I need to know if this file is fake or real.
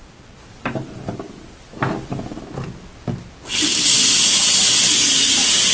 real